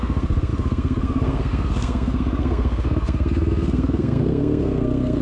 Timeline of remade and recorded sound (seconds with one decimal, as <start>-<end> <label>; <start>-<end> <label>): 0.0-5.2 remade